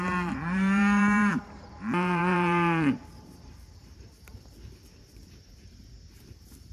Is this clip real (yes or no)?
no